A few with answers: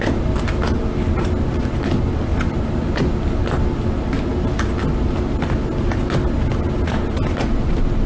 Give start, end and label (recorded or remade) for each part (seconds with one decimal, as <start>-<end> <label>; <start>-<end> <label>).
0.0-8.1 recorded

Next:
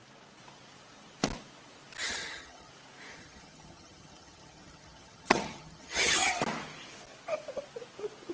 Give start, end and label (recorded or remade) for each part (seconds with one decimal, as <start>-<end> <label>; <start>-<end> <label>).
0.0-2.0 recorded; 2.0-2.7 remade; 2.7-3.1 recorded; 3.1-6.4 remade; 6.4-8.3 recorded

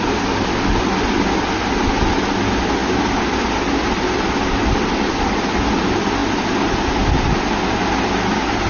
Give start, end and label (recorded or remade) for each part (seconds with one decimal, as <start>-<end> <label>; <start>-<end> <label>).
0.0-8.7 recorded

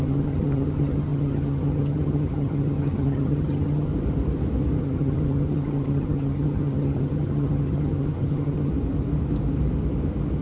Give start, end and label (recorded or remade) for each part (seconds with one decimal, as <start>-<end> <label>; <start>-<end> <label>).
0.0-3.9 remade; 3.9-4.8 recorded; 4.8-8.7 remade; 8.7-10.4 recorded